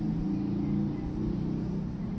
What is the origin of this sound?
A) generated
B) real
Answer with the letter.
B